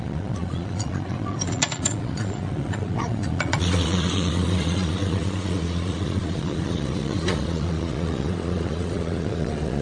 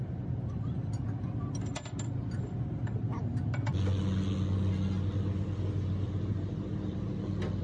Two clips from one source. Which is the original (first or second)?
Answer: second